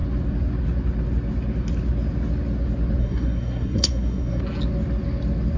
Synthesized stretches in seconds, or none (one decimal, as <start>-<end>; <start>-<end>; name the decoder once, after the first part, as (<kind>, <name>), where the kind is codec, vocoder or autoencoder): 3.0-4.4 (codec, SNAC)